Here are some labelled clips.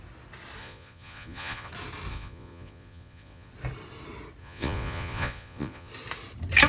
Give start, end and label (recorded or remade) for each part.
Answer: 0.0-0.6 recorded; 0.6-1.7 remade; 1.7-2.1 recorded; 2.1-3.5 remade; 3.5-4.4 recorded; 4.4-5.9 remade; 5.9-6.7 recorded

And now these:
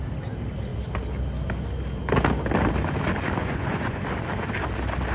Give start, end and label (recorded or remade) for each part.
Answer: 0.0-3.4 recorded; 3.4-4.0 remade; 4.0-5.1 recorded

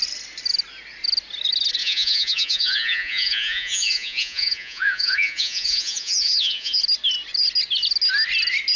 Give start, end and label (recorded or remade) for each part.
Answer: 0.0-1.8 recorded; 1.8-6.8 remade; 6.8-8.8 recorded